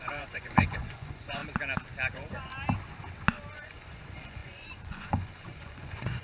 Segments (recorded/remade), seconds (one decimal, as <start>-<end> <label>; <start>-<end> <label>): 0.0-1.4 remade; 1.4-2.1 recorded; 2.1-2.5 remade; 2.5-3.5 recorded; 3.5-6.2 remade